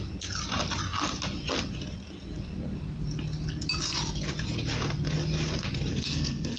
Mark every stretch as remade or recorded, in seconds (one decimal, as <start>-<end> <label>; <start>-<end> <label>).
0.0-5.9 recorded; 5.9-6.6 remade